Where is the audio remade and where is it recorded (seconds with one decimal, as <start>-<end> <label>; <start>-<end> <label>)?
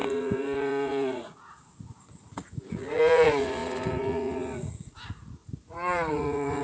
0.0-6.6 remade